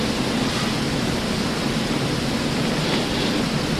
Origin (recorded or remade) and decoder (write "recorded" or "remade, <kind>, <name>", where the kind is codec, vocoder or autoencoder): recorded